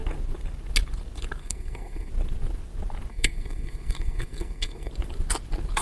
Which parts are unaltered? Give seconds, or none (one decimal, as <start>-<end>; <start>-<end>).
0.0-1.4; 2.1-3.1; 4.9-5.8